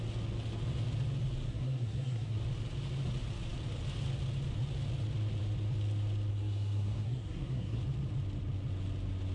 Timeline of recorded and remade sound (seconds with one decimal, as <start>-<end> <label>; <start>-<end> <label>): 0.0-1.5 recorded; 1.5-2.4 remade; 2.4-6.3 recorded; 6.3-7.8 remade; 7.8-9.3 recorded